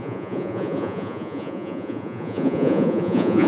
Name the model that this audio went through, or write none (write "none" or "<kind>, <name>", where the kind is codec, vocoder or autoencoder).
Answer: vocoder, Vocos